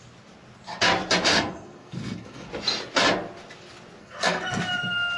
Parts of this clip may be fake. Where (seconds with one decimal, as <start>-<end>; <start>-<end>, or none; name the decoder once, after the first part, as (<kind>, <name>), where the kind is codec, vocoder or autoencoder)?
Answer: 1.3-2.5 (codec, SNAC); 4.0-4.6